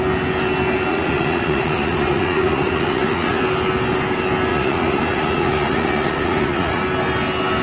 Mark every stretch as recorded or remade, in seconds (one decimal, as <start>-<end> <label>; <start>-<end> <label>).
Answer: 0.0-0.9 recorded; 0.9-3.4 remade; 3.4-4.5 recorded; 4.5-6.8 remade; 6.8-7.6 recorded